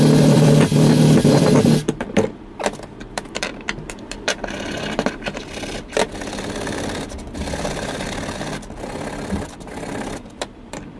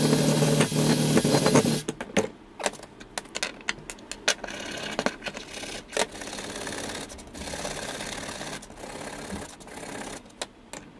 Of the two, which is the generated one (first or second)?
first